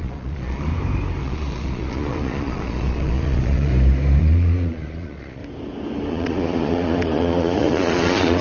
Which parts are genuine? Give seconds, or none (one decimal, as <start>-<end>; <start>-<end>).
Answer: 0.7-1.2; 3.7-4.2; 5.4-6.1